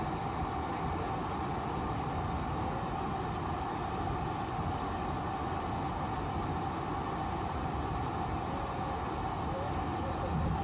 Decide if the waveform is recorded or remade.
recorded